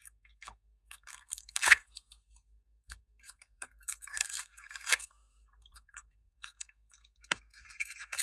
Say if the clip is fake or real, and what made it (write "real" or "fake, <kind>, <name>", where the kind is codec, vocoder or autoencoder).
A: fake, codec, SNAC